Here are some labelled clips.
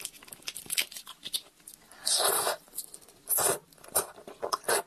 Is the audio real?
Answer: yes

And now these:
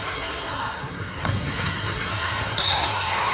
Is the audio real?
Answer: no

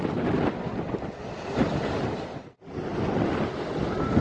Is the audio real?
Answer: yes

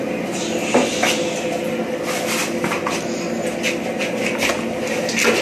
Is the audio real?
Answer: yes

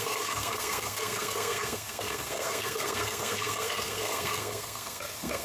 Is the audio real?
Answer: no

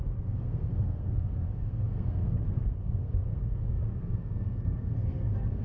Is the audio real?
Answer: no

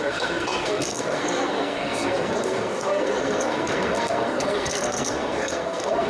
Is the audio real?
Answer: no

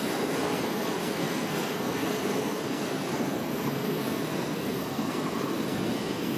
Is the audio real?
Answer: no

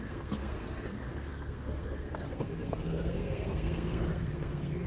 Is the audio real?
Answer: no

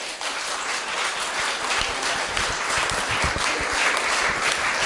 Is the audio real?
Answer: yes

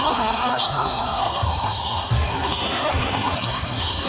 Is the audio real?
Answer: no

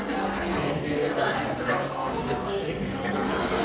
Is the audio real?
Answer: no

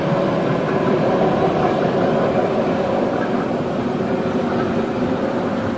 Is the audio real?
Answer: yes